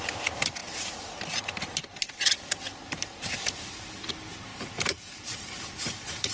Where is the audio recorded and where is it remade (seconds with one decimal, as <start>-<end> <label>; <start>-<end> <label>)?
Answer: 0.0-2.8 recorded; 2.8-4.1 remade; 4.1-6.3 recorded